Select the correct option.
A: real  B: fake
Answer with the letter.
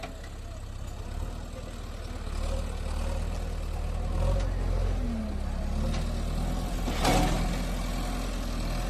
A